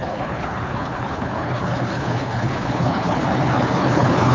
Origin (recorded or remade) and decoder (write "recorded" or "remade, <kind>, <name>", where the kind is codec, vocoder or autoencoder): remade, codec, HILCodec